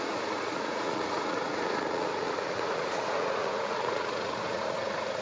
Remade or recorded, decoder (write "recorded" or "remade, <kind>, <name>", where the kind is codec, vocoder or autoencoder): remade, vocoder, Vocos